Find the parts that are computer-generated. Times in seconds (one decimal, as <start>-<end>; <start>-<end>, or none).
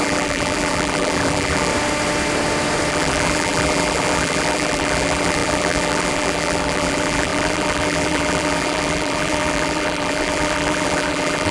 0.0-1.7; 2.9-11.5